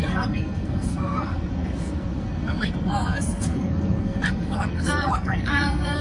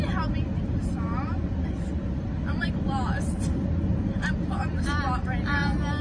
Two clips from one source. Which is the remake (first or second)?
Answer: first